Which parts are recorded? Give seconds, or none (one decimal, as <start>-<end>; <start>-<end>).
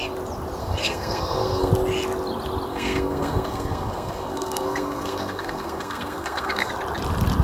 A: 0.0-0.6; 1.7-2.7; 6.7-7.4